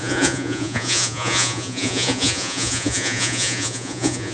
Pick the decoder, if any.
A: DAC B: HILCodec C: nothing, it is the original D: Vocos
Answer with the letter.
D